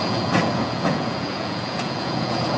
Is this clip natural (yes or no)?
no